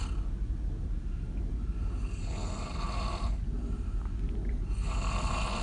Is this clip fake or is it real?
real